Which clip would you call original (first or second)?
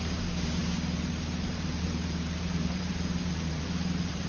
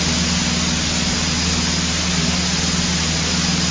second